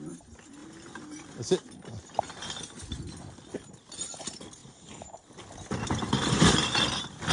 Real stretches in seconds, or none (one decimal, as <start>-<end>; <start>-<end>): 0.0-7.3